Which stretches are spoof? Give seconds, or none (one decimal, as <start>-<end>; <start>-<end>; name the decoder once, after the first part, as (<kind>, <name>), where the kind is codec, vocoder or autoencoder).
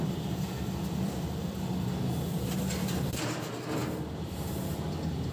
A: 0.0-3.8 (vocoder, BigVGAN v2)